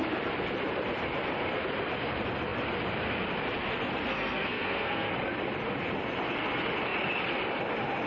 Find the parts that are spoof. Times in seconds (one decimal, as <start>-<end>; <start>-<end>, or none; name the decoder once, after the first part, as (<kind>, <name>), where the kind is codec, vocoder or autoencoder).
4.1-5.1 (codec, SNAC)